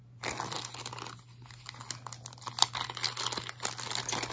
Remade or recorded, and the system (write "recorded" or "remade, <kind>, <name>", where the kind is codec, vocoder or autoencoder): recorded